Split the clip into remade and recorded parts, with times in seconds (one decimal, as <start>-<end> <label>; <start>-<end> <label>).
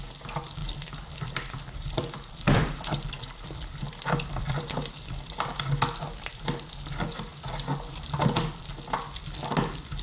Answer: 0.0-0.6 recorded; 0.6-5.7 remade; 5.7-10.0 recorded